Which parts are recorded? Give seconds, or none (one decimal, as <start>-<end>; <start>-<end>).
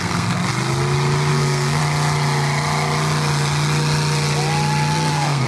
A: 0.4-1.3; 1.8-5.1